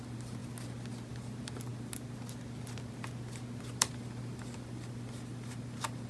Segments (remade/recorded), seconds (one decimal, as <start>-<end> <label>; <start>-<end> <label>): 0.0-0.4 remade; 0.4-1.1 recorded; 1.1-1.7 remade; 1.7-3.7 recorded; 3.7-6.1 remade